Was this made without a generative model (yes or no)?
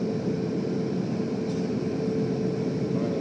yes